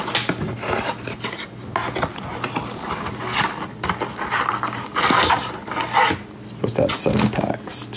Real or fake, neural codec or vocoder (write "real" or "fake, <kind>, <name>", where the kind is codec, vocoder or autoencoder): real